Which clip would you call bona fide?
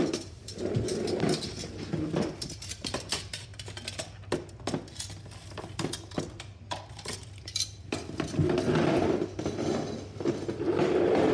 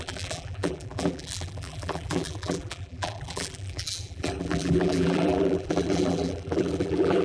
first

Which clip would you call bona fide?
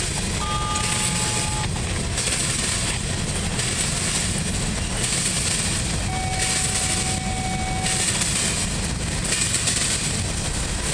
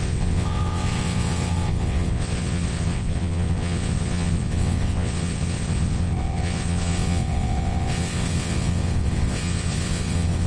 first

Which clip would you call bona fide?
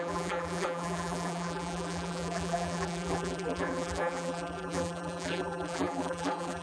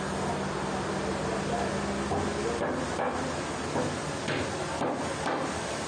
second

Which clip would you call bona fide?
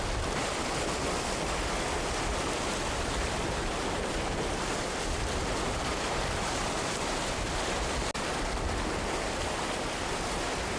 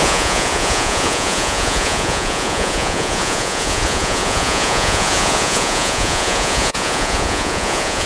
first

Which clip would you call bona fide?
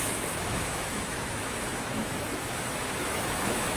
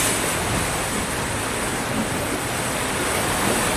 second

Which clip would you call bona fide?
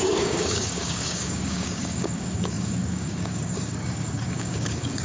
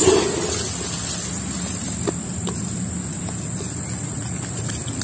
second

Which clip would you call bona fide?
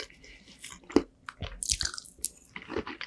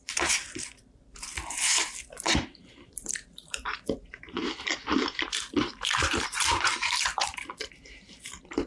first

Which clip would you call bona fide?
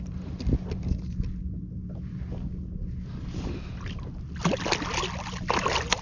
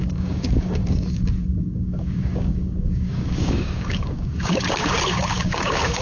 first